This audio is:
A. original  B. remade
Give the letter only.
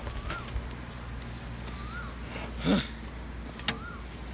A